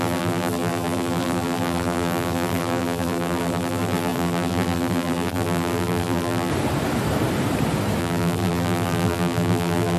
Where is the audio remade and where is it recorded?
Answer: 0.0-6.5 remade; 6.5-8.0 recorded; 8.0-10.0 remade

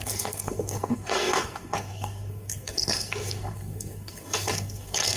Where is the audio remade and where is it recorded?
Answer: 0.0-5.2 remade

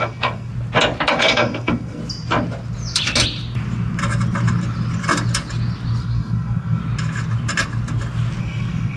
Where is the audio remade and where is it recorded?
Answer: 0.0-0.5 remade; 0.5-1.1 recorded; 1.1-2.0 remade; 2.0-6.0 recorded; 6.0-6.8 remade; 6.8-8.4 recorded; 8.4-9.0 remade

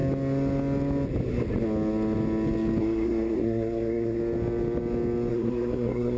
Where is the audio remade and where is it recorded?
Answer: 0.0-2.8 recorded; 2.8-4.2 remade; 4.2-5.3 recorded; 5.3-6.2 remade

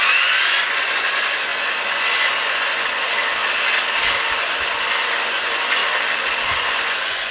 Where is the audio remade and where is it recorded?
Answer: 0.0-3.4 remade; 3.4-4.4 recorded; 4.4-5.8 remade; 5.8-6.5 recorded; 6.5-7.3 remade

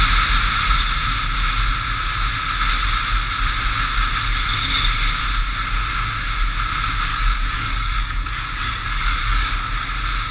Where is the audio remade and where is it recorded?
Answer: 0.0-7.1 recorded; 7.1-9.5 remade; 9.5-10.3 recorded